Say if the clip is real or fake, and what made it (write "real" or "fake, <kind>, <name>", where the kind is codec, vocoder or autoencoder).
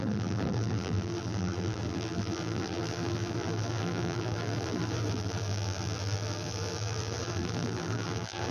fake, vocoder, BigVGAN v2